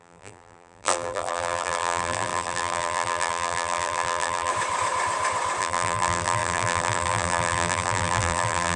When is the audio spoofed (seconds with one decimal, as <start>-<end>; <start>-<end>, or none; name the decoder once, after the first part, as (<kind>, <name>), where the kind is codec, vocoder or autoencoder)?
0.0-4.5 (vocoder, BigVGAN v2); 5.6-8.8

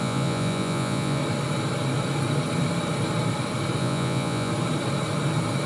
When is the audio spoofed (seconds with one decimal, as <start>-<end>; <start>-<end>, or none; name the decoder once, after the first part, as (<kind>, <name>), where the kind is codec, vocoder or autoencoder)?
0.0-1.2 (vocoder, Vocos); 3.8-4.5

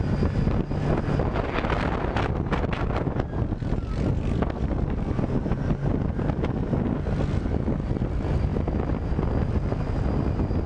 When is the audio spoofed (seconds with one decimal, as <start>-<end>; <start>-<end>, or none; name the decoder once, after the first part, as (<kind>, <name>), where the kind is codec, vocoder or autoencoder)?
none

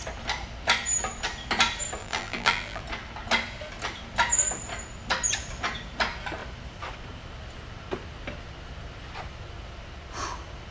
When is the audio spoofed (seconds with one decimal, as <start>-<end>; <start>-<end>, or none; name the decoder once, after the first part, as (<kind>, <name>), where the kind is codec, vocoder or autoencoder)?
2.0-2.8 (vocoder, BigVGAN v2)